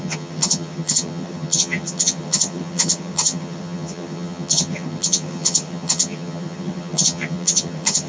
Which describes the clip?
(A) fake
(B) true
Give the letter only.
A